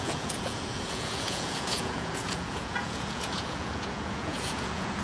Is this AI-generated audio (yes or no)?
yes